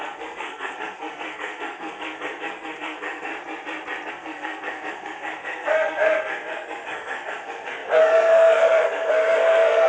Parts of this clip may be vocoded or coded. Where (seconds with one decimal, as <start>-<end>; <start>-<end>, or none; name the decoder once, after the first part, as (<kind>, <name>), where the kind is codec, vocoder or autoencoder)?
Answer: 0.0-3.3 (codec, SNAC); 4.1-9.9